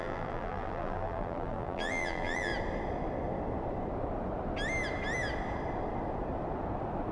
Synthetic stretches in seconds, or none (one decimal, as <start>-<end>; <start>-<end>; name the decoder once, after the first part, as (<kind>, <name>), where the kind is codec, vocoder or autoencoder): 0.0-2.5 (vocoder, BigVGAN v2)